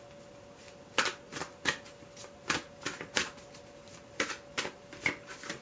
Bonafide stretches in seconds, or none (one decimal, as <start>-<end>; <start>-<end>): 0.0-5.6